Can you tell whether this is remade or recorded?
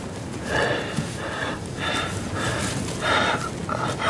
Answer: recorded